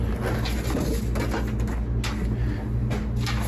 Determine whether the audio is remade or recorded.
recorded